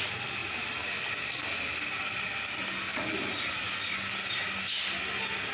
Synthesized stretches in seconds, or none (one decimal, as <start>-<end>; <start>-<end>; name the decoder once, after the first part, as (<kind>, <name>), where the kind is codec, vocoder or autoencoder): 2.9-5.0 (vocoder, BigVGAN v2)